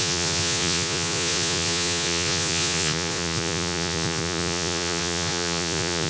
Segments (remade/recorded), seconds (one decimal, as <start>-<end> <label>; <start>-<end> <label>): 0.0-6.1 remade